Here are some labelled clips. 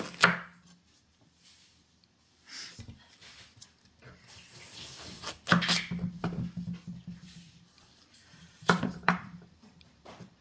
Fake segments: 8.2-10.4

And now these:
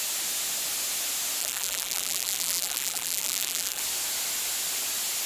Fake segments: 1.4-3.8

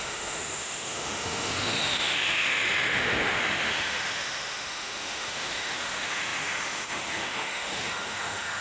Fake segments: 0.0-8.6

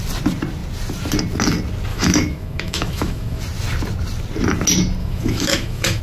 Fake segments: 1.9-3.4; 5.0-6.0